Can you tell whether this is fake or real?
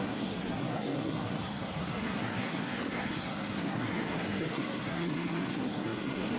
fake